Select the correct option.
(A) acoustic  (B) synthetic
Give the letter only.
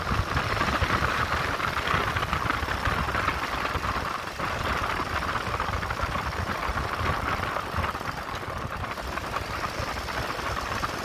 A